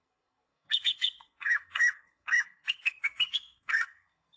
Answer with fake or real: fake